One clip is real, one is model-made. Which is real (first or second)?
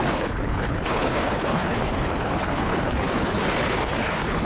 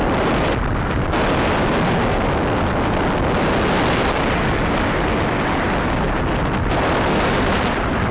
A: second